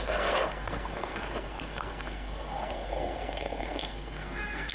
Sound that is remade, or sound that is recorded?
remade